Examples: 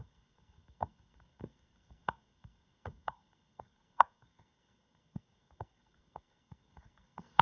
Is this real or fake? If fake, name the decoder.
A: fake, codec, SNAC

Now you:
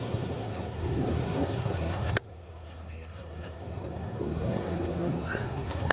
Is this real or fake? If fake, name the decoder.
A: fake, codec, SNAC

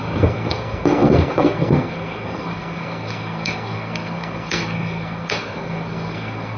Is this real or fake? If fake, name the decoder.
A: fake, codec, SNAC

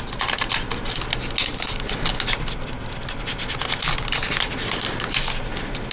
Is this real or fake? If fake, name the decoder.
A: real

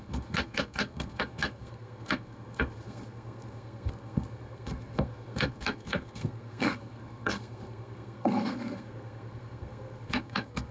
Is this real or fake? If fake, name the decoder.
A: fake, codec, SNAC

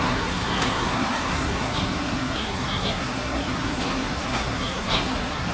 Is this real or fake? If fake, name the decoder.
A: fake, codec, SNAC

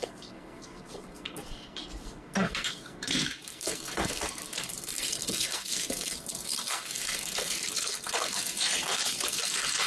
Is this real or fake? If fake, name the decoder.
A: fake, codec, SNAC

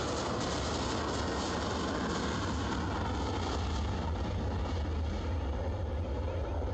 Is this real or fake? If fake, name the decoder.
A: real